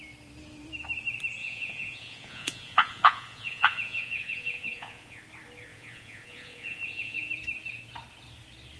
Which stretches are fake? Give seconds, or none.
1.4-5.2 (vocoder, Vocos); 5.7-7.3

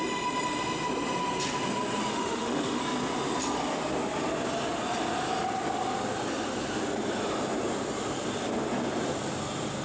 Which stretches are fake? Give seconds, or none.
2.1-2.8 (autoencoder, DAC-VAE)

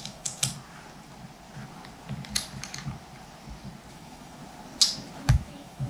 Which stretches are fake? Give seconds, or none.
0.0-0.4 (autoencoder, DAC-VAE); 3.9-4.4; 5.3-5.9